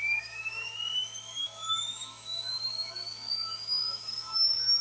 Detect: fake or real fake